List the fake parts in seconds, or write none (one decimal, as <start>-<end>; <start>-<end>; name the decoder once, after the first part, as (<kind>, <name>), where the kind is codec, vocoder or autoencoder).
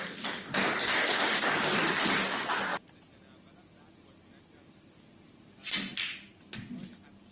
none